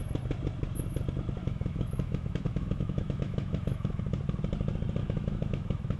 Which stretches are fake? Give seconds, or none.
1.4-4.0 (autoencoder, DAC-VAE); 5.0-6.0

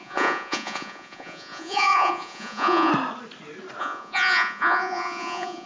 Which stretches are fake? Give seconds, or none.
0.0-2.9 (vocoder, Vocos); 3.8-5.7

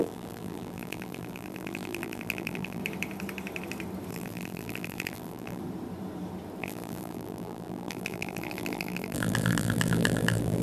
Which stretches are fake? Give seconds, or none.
0.0-2.8 (vocoder, BigVGAN v2); 4.1-5.6; 6.6-10.6

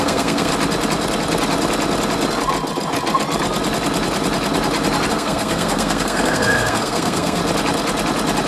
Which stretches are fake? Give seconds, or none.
0.0-0.5 (codec, SNAC); 5.1-7.4

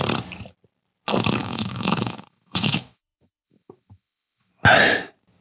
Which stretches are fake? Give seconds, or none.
1.4-4.5 (autoencoder, DAC-VAE)

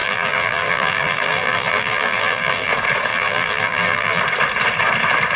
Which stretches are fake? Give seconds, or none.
0.0-2.7 (vocoder, BigVGAN v2); 3.1-4.2